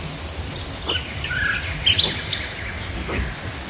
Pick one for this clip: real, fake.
real